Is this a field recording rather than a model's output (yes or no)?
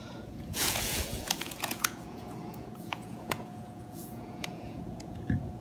no